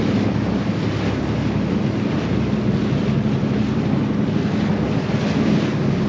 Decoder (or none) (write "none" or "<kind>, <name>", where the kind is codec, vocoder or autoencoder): none